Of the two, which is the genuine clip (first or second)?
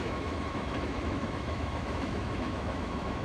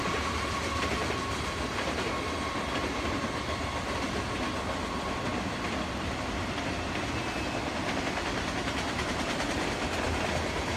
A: second